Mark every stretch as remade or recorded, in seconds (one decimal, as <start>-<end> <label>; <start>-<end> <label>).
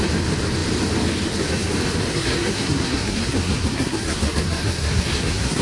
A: 0.0-2.1 recorded; 2.1-5.6 remade